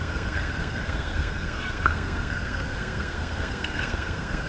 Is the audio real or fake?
fake